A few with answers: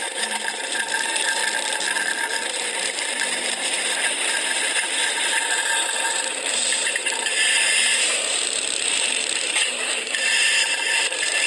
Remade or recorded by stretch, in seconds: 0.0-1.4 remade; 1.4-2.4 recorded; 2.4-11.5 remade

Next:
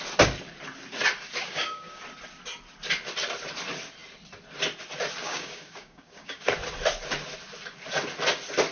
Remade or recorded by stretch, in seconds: 0.0-1.4 recorded; 1.4-2.0 remade; 2.0-5.2 recorded; 5.2-6.5 remade; 6.5-8.7 recorded

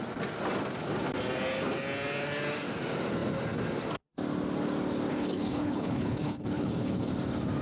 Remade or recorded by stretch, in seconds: 0.0-5.1 recorded; 5.1-7.1 remade; 7.1-7.6 recorded

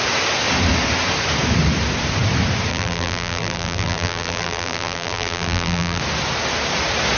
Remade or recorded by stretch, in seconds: 0.0-2.7 recorded; 2.7-6.0 remade; 6.0-7.2 recorded

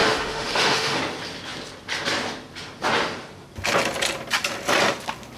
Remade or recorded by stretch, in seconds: 0.0-1.0 remade; 1.0-5.4 recorded

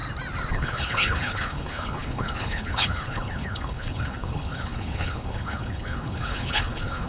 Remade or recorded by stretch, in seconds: 0.0-0.5 recorded; 0.5-7.1 remade

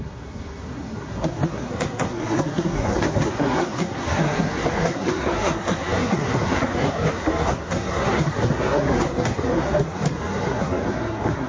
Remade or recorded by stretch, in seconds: 0.0-11.5 remade